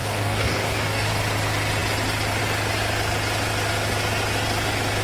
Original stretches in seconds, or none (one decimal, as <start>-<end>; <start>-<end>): 1.1-5.0

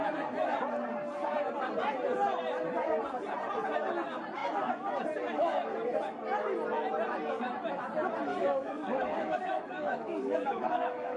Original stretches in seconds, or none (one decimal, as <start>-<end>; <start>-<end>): 0.0-8.3

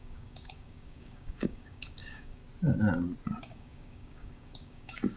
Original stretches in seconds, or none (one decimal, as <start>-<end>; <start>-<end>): 2.4-3.4

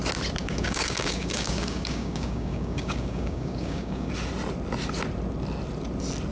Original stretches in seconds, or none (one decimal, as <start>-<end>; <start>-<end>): 0.0-0.4; 4.1-6.3

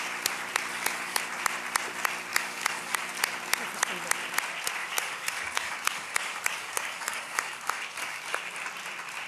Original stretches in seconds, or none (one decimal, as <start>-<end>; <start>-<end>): 0.0-0.7; 1.2-2.3; 3.0-4.8; 8.5-9.3

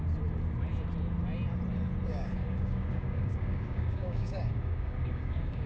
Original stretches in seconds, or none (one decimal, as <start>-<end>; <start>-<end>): 0.0-2.1